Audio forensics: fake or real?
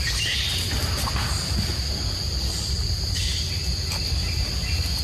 real